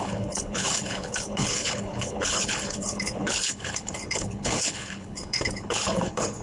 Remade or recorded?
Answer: remade